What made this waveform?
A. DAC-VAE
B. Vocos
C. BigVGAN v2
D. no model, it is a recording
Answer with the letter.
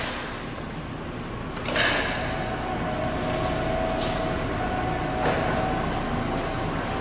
D